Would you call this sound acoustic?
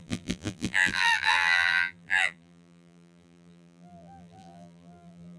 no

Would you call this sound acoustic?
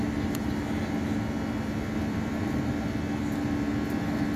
yes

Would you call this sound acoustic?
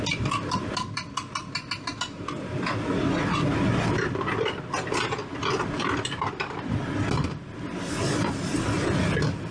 yes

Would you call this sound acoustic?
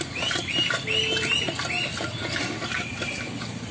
yes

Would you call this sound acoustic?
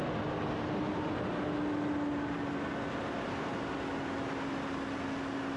yes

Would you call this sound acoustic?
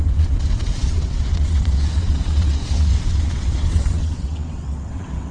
no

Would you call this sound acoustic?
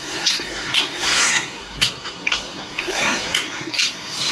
no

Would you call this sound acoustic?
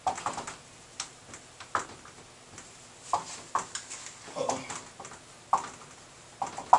yes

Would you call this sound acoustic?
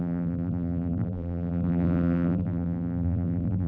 no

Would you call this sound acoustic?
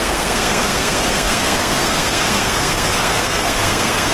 no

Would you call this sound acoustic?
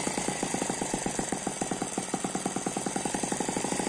yes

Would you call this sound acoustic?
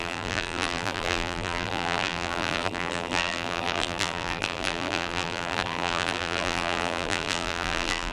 no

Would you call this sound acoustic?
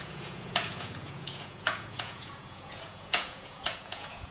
no